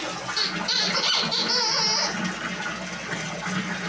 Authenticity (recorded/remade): recorded